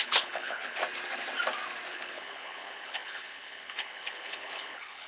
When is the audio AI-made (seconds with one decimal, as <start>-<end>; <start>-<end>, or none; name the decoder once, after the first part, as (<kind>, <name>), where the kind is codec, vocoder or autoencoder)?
0.0-0.8 (codec, HILCodec); 1.9-5.1